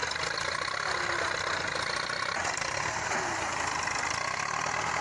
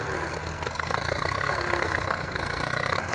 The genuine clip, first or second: first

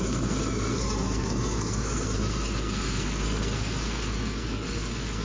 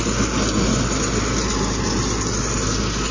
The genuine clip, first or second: second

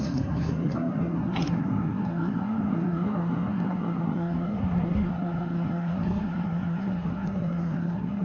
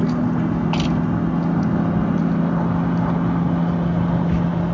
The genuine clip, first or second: second